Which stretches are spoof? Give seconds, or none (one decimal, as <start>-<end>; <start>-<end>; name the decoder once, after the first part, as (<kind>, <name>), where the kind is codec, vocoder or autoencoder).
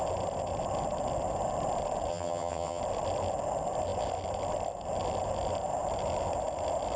2.1-2.8 (vocoder, HiFi-GAN)